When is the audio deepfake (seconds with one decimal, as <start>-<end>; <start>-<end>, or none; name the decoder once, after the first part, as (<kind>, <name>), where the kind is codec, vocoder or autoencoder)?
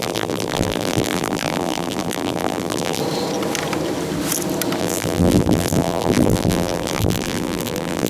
0.0-3.0 (vocoder, BigVGAN v2); 4.8-8.1